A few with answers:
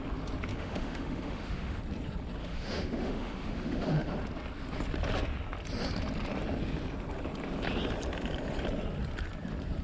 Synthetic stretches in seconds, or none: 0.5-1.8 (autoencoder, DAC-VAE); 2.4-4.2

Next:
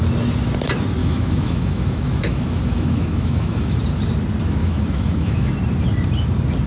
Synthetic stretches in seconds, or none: 1.0-3.8 (autoencoder, DAC-VAE); 4.6-5.5